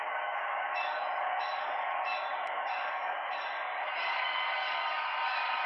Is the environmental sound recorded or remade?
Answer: remade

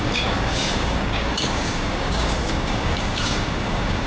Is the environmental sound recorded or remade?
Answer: remade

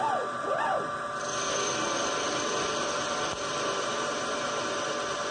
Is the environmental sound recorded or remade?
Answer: recorded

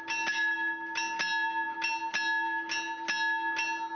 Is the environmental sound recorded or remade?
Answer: recorded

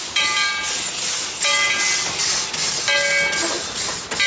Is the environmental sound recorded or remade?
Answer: recorded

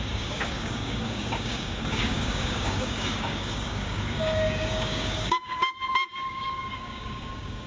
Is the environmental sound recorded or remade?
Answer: remade